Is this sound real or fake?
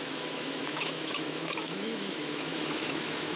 fake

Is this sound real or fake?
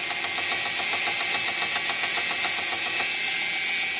real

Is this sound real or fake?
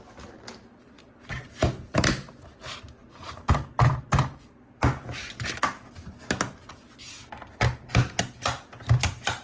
real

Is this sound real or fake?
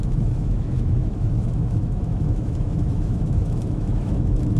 fake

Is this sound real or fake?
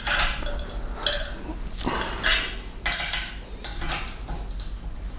real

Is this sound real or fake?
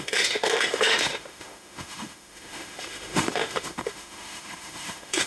fake